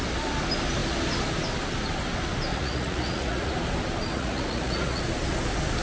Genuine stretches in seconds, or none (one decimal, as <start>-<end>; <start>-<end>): 0.0-2.5; 3.5-4.1; 5.0-5.8